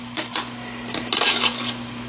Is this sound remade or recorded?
recorded